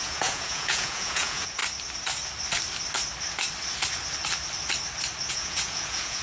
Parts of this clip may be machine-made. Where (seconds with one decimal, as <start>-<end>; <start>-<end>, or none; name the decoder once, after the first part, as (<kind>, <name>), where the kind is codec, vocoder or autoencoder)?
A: 0.0-1.6 (vocoder, Vocos); 5.3-6.2

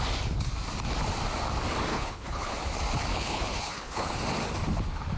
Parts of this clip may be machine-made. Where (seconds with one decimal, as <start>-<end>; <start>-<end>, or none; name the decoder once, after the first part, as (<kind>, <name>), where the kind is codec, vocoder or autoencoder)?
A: 1.9-2.5 (codec, HILCodec); 3.1-4.1

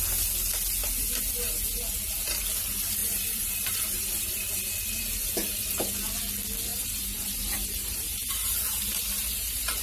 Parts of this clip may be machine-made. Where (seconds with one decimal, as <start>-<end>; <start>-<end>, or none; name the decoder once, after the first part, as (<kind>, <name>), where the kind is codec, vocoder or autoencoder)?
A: 3.0-4.6 (vocoder, BigVGAN v2); 5.2-5.9; 6.7-9.8

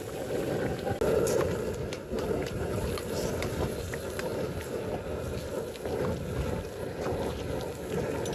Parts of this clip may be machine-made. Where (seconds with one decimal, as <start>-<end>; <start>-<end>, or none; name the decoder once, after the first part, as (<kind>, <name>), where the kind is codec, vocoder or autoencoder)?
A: 2.4-3.5 (vocoder, BigVGAN v2)

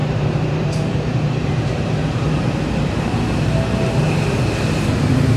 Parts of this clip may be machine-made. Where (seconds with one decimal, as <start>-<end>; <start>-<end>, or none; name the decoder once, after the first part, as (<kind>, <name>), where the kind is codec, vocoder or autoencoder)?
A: 0.0-3.2 (vocoder, BigVGAN v2)